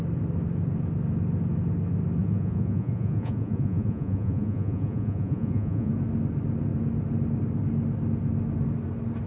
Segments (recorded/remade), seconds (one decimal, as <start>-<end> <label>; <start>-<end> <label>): 0.0-2.2 recorded; 2.2-5.9 remade; 5.9-9.3 recorded